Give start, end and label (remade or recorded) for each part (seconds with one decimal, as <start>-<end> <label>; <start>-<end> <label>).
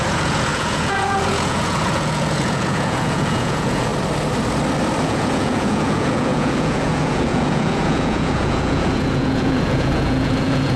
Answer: 0.0-3.9 remade; 3.9-5.0 recorded; 5.0-10.8 remade